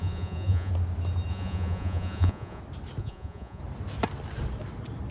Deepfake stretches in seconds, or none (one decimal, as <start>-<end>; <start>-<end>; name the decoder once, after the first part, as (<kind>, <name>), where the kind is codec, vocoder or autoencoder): 0.0-0.7 (vocoder, Vocos); 1.3-2.6; 3.0-3.6